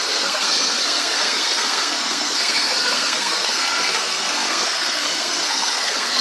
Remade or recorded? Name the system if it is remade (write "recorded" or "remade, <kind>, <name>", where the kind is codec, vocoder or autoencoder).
remade, codec, SNAC